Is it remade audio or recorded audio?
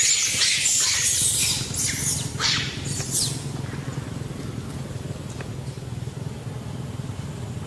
recorded